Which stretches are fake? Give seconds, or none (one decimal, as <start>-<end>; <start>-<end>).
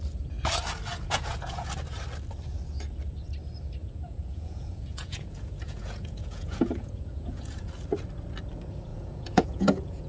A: 0.9-1.7; 3.8-7.7; 8.9-10.1